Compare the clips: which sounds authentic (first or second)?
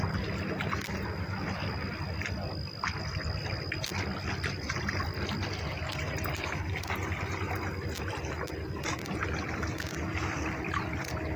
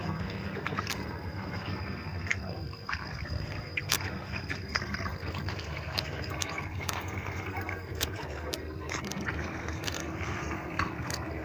first